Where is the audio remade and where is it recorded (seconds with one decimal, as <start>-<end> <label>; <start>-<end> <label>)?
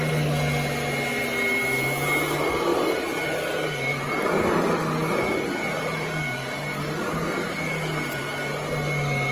0.0-9.3 recorded